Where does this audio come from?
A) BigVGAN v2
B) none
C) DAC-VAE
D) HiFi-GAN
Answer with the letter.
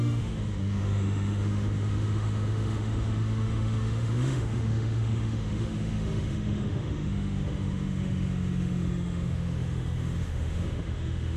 C